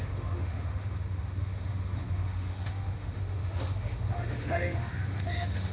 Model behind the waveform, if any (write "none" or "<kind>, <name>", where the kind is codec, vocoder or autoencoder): autoencoder, DAC-VAE